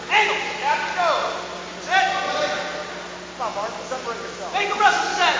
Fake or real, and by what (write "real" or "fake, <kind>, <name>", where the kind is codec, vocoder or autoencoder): real